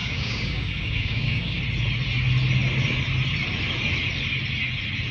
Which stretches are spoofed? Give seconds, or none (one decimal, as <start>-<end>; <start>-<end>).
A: 0.0-1.6